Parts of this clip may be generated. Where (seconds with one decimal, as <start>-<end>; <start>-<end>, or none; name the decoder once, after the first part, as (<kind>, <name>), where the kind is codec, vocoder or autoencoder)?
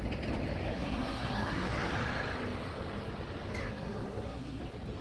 0.7-1.9 (codec, SNAC); 3.6-4.6